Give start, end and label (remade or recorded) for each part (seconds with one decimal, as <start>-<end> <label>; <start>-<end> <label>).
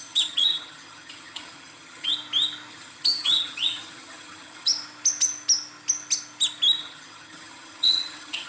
0.0-2.1 remade; 2.1-2.7 recorded; 2.7-4.7 remade; 4.7-6.8 recorded; 6.8-8.5 remade